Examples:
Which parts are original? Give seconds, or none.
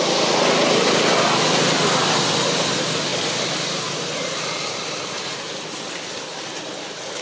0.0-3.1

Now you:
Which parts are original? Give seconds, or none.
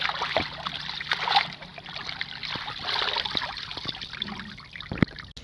0.0-5.4